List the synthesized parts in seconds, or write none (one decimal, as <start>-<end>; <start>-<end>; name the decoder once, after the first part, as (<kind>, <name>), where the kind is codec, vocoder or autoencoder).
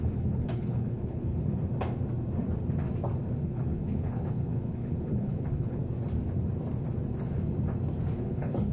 0.0-1.6 (codec, HILCodec); 3.3-5.8; 8.1-8.7